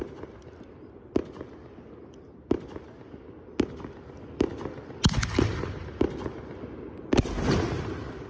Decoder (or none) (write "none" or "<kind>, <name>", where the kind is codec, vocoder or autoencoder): none